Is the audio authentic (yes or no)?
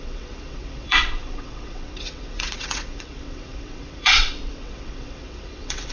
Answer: no